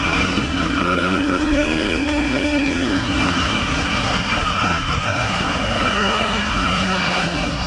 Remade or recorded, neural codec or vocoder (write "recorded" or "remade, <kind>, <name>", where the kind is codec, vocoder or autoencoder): remade, codec, SNAC